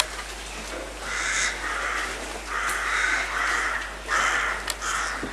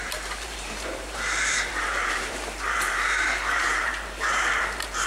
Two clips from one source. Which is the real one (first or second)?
first